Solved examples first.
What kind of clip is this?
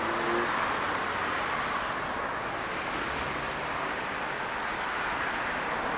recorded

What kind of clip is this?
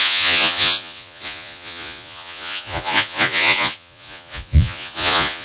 remade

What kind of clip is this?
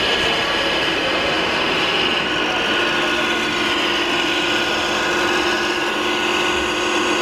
recorded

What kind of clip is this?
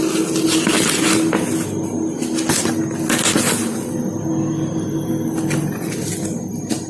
recorded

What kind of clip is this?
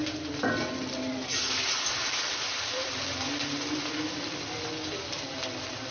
recorded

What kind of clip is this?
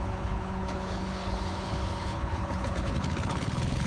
remade